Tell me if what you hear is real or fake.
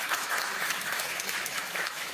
fake